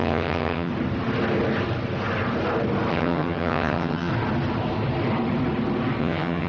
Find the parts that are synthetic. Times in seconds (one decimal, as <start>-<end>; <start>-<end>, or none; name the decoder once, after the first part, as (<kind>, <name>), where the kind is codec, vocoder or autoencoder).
0.0-0.7 (vocoder, HiFi-GAN); 2.9-4.1; 6.0-6.5